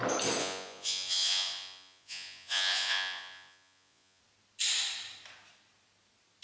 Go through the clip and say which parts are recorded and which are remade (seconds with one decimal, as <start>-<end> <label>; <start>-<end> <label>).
0.0-0.4 recorded; 0.4-4.2 remade; 4.2-6.4 recorded